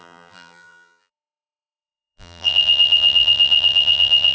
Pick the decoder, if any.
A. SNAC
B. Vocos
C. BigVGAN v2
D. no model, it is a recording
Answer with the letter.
C